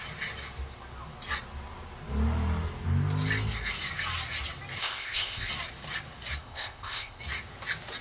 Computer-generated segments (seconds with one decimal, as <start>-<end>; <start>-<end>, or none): 4.8-5.5; 6.4-7.2